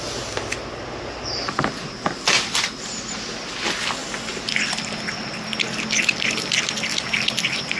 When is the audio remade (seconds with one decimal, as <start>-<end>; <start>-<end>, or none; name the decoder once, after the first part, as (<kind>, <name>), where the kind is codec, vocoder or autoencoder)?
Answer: none